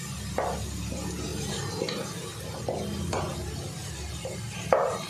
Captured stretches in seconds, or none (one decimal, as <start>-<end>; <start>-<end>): 0.0-5.1